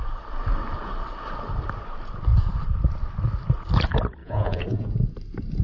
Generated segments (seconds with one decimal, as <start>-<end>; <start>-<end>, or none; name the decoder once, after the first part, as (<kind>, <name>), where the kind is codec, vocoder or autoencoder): 4.2-4.9 (vocoder, Vocos)